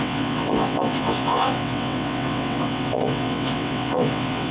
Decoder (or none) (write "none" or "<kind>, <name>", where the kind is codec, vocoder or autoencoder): vocoder, WaveNeXt